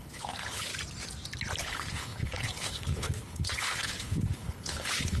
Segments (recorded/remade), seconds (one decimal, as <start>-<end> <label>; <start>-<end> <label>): 0.0-0.7 remade; 0.7-1.6 recorded; 1.6-5.2 remade

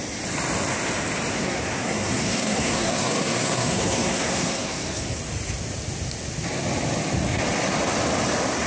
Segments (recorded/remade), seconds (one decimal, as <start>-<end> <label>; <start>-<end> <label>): 0.0-1.3 recorded; 1.3-5.2 remade; 5.2-8.7 recorded

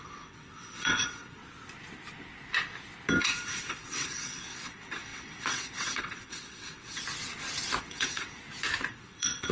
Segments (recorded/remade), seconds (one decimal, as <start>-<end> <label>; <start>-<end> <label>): 0.0-1.4 remade; 1.4-3.2 recorded; 3.2-7.0 remade; 7.0-7.8 recorded; 7.8-8.4 remade; 8.4-8.9 recorded; 8.9-9.5 remade

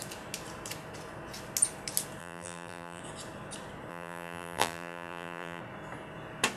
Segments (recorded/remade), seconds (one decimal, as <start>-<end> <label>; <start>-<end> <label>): 0.0-2.2 recorded; 2.2-3.0 remade; 3.0-3.9 recorded; 3.9-5.6 remade; 5.6-6.6 recorded

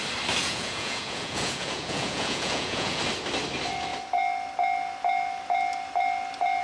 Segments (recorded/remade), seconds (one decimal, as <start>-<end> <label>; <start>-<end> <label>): 0.0-0.4 recorded; 0.4-3.0 remade; 3.0-6.6 recorded